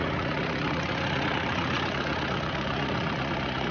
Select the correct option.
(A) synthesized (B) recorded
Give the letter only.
A